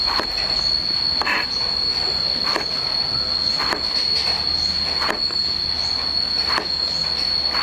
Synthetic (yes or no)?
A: no